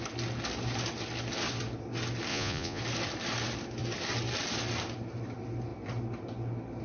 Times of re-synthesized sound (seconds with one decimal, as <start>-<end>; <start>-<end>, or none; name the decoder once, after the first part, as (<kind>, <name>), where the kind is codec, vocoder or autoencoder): 2.3-2.8 (vocoder, Vocos)